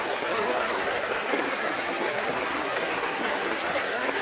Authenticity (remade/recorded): remade